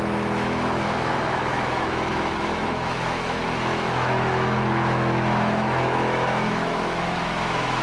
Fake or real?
fake